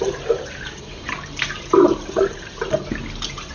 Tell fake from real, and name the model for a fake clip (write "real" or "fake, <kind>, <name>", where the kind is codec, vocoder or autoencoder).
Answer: real